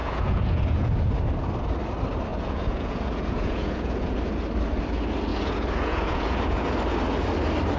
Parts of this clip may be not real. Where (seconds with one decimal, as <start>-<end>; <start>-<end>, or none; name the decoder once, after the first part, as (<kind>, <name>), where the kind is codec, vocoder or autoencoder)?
0.0-1.0 (vocoder, Vocos); 2.3-4.2; 5.3-6.8